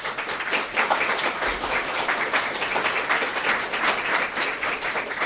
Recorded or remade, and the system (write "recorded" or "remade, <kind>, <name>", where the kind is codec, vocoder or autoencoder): recorded